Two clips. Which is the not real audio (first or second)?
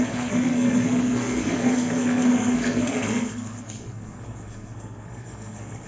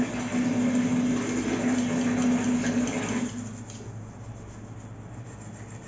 first